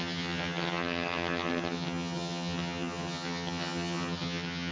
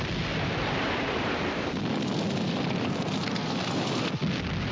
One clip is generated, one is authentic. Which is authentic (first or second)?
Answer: second